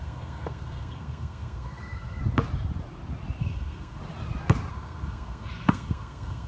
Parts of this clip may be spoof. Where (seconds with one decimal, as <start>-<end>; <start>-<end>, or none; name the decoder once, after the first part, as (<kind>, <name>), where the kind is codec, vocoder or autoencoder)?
0.0-2.2 (codec, SNAC); 3.4-4.0; 4.7-6.5